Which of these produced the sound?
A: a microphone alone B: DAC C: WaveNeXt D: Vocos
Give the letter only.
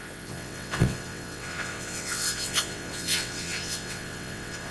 C